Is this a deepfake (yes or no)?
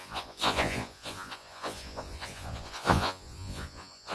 yes